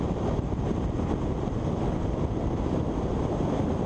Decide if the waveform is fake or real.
real